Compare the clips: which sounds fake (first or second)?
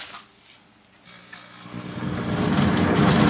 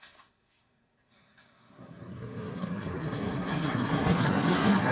second